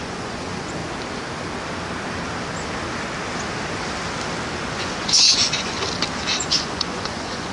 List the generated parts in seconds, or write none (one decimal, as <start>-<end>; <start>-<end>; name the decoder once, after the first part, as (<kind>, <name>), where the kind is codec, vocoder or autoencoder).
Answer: 0.0-0.8 (vocoder, Vocos); 4.6-5.8; 6.4-7.5